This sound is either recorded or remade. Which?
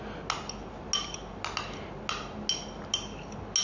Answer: recorded